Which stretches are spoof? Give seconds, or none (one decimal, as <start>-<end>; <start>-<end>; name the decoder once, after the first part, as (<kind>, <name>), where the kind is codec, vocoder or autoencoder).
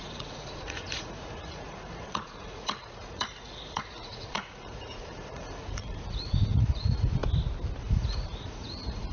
0.0-7.2 (vocoder, Vocos); 7.8-9.1